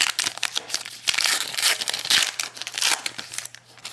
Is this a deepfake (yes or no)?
no